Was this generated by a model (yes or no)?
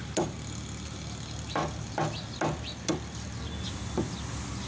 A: no